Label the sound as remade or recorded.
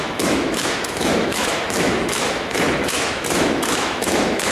remade